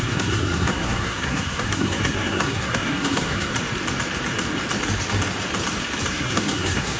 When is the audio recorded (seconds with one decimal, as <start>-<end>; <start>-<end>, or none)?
3.5-6.1